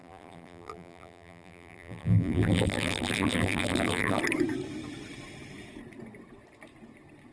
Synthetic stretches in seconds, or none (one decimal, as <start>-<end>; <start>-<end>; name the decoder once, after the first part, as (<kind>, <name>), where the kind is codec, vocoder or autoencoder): 0.0-4.2 (vocoder, BigVGAN v2)